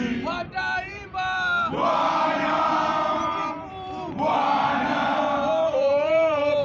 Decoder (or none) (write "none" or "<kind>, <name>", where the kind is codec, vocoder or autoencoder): vocoder, BigVGAN v2